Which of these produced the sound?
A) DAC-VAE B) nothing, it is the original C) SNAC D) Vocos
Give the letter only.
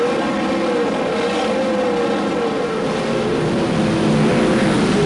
B